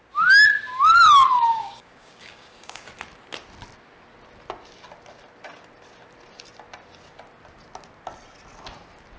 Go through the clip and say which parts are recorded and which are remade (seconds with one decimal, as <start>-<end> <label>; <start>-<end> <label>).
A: 0.0-1.3 recorded; 1.3-2.9 remade; 2.9-9.2 recorded